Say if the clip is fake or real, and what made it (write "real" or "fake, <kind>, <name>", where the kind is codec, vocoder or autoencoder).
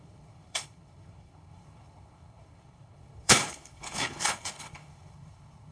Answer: fake, codec, HILCodec